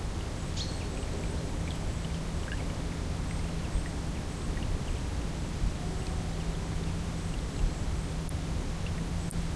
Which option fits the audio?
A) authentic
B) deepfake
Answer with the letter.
A